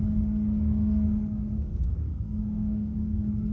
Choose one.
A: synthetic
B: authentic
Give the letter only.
A